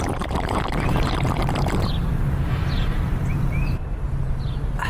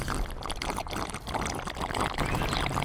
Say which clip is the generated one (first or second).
first